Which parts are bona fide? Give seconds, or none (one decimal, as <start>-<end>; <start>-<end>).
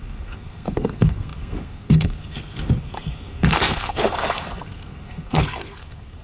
none